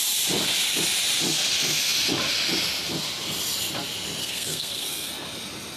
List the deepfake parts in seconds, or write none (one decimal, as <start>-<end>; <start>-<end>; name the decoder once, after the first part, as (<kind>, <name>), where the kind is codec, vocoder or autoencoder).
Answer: 4.2-5.1 (codec, SNAC)